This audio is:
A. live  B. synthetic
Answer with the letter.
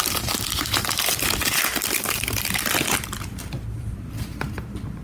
B